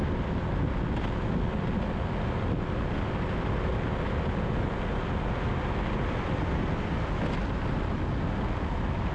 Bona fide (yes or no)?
yes